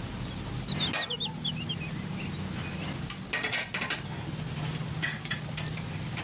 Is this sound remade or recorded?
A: recorded